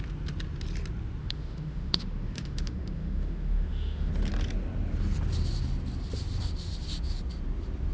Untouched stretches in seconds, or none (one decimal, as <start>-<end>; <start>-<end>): 0.0-1.2; 4.1-7.9

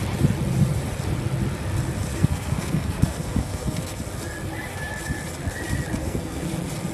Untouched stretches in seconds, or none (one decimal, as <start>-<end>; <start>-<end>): 0.0-2.1; 4.0-6.0; 6.5-6.9